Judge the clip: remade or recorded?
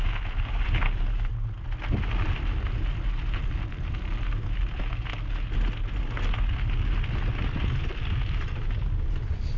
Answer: recorded